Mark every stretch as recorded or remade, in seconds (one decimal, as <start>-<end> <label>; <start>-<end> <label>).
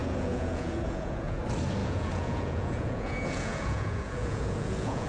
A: 0.0-1.4 remade; 1.4-1.8 recorded; 1.8-5.1 remade